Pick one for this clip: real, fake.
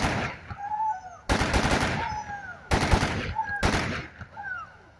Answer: real